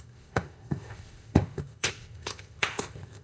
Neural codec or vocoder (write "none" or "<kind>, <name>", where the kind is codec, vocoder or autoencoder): codec, ZipCodec